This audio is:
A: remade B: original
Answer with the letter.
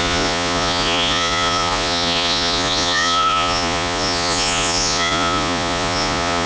A